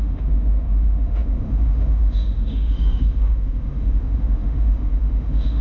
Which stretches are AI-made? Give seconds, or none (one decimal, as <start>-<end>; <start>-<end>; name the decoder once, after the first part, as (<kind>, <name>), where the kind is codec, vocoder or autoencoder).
0.0-5.6 (autoencoder, DAC-VAE)